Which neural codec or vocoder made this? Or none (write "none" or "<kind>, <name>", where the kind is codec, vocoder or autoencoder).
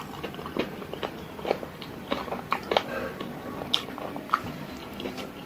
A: vocoder, BigVGAN v2